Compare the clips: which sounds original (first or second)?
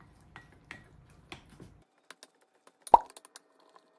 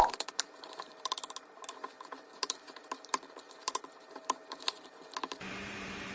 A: first